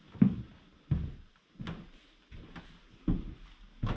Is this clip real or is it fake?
real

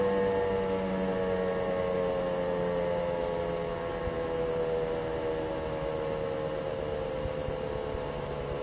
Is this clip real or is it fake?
real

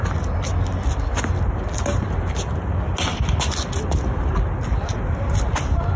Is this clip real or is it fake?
real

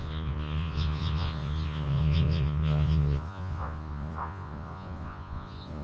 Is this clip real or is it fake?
fake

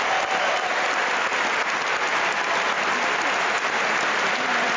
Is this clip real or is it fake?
real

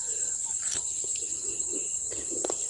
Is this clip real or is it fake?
real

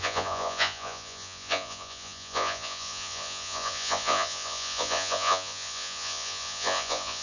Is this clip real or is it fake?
fake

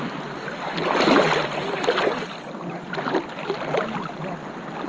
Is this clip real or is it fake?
real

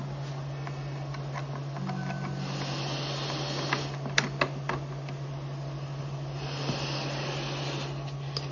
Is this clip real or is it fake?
real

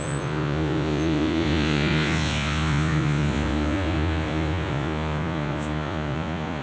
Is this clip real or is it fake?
fake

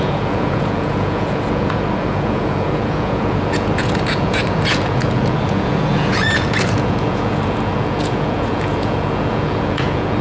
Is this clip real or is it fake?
fake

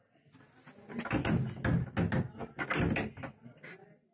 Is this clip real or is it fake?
real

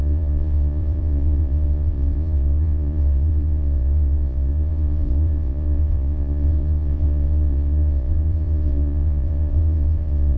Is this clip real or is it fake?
fake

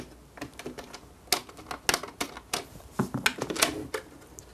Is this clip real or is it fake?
real